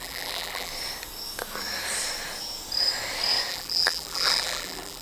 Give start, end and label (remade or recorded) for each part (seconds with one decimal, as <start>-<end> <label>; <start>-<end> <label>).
0.0-0.7 remade; 0.7-3.5 recorded; 3.5-5.0 remade